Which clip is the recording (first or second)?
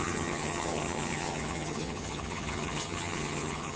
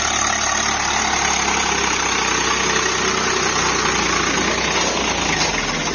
second